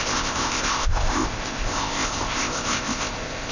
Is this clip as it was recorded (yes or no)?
no